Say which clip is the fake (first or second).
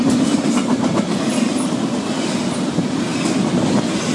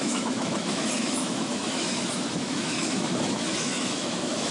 second